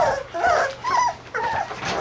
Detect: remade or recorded recorded